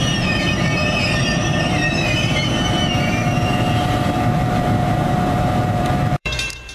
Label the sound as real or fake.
fake